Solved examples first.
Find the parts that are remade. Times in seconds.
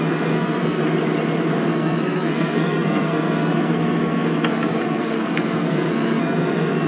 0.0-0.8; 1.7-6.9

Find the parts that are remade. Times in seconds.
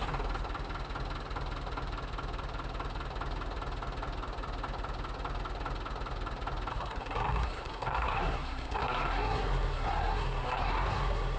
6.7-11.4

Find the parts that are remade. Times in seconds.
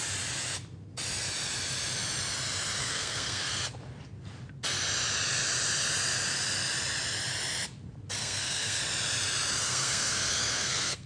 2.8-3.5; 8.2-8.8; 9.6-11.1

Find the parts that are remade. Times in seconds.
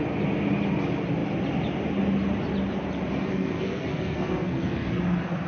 3.3-4.9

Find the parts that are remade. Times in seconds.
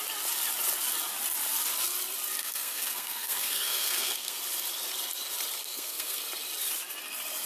2.4-4.4; 5.6-6.2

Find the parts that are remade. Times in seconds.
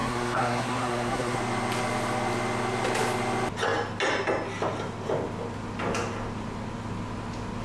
0.0-1.4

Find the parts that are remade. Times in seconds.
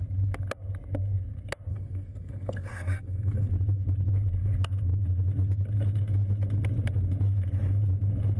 1.7-3.5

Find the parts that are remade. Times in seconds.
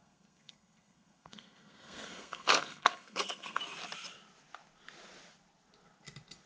0.0-3.6